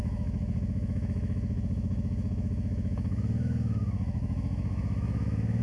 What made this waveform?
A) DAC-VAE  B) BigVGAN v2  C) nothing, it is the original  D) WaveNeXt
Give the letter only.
A